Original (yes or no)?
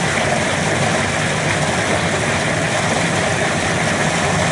yes